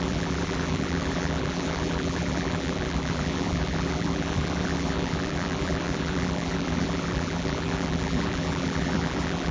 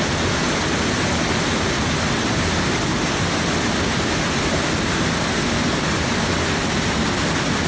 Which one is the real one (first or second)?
second